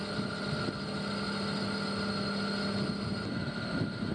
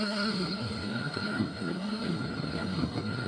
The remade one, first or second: second